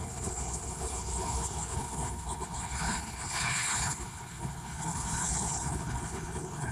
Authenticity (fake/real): fake